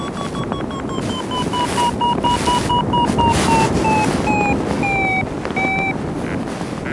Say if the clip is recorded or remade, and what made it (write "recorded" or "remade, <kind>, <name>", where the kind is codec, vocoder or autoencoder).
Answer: recorded